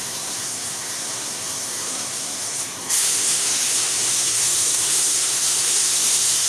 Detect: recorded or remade remade